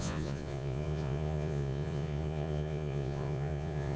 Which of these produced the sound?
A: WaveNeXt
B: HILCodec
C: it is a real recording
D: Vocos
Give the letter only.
D